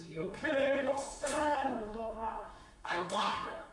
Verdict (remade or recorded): remade